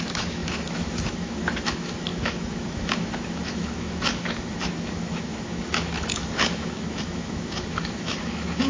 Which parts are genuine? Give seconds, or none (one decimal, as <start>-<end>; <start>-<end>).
none